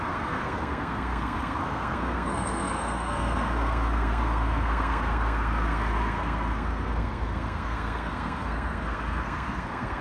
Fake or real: fake